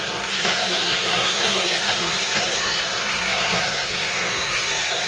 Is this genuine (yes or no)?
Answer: no